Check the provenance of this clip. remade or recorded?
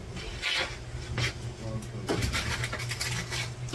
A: recorded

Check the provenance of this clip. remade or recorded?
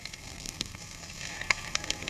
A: remade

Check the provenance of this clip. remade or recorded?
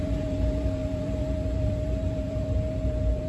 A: remade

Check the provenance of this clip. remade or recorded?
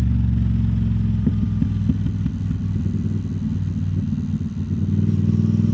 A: recorded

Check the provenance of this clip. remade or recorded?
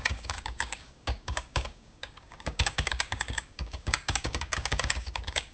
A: remade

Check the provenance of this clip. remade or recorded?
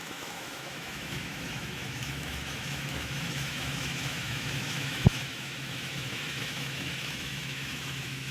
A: remade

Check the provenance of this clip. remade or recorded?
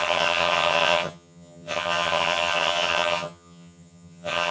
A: remade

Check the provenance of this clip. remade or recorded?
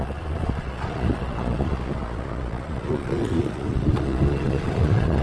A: remade